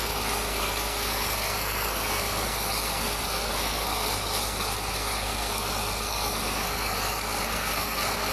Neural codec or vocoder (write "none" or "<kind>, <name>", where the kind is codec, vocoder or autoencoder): codec, SNAC